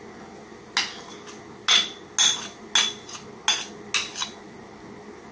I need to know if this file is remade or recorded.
recorded